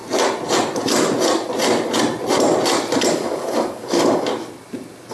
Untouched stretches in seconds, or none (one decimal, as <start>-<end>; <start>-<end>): 0.0-3.1; 4.3-5.1